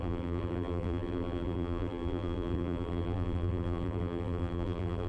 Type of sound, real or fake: fake